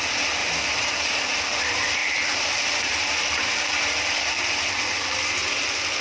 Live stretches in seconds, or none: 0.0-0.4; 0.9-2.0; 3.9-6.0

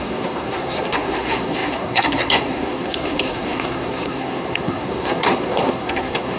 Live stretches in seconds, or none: none

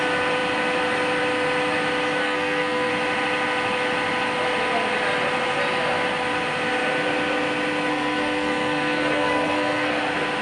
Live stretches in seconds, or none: 0.0-2.2; 2.9-7.9; 9.9-10.4

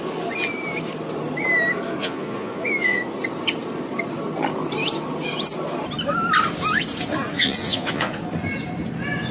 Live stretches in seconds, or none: 0.0-2.0; 3.0-7.3; 8.2-9.3

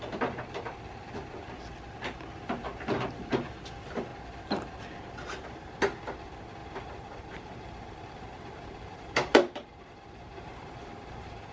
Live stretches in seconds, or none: 0.0-6.6

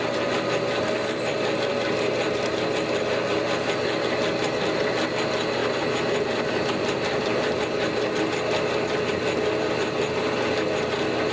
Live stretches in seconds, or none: 0.0-11.3

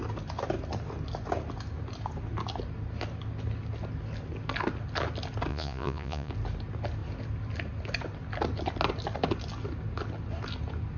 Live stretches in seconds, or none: 0.0-5.5; 6.3-11.0

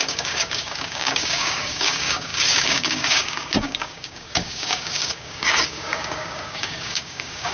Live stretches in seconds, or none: none